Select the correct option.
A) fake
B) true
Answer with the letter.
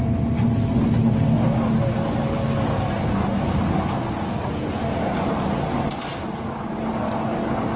B